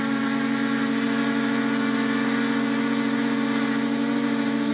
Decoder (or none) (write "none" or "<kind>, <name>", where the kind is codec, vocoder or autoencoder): none